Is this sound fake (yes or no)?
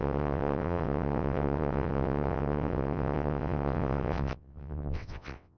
yes